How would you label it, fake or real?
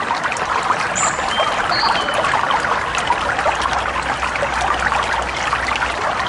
real